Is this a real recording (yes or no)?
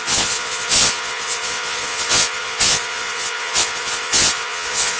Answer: no